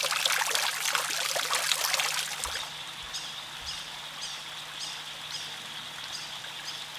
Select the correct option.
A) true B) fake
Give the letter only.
A